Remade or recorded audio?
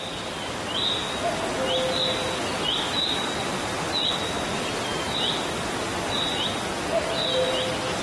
recorded